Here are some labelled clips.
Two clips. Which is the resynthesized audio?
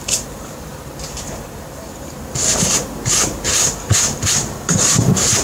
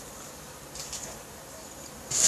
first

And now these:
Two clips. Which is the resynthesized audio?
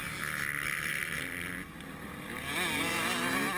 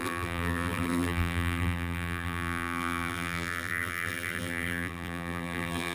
second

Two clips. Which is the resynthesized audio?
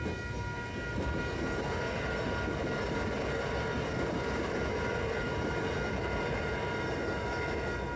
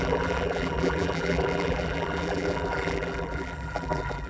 second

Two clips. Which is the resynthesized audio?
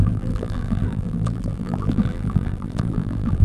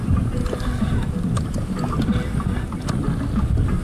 first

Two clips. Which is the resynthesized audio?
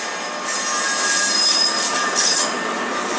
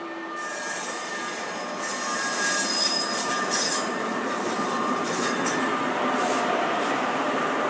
second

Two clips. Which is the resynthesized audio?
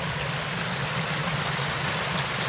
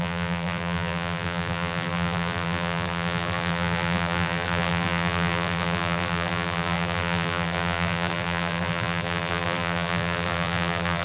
second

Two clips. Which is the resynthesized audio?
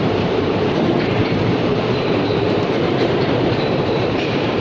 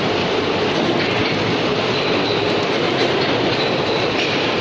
first